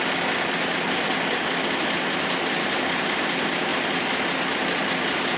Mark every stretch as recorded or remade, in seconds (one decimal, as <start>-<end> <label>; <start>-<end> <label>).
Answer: 0.0-5.4 recorded